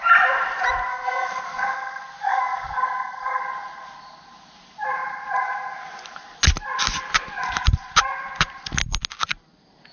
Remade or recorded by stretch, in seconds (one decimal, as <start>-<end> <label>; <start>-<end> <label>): 0.0-0.9 recorded; 0.9-3.4 remade; 3.4-9.9 recorded